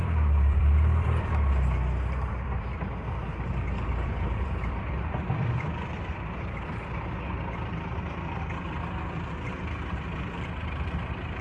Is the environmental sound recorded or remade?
remade